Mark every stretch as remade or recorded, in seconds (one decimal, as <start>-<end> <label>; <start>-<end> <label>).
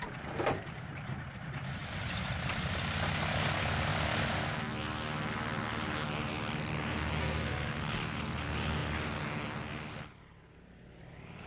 0.0-7.2 recorded; 7.2-7.8 remade; 7.8-11.5 recorded